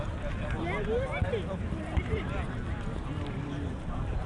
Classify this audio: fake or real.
real